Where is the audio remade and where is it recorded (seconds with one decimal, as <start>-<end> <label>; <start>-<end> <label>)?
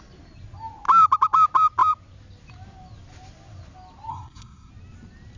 0.0-4.1 recorded; 4.1-4.7 remade; 4.7-5.4 recorded